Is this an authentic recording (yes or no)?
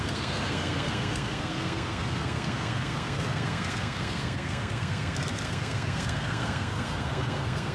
no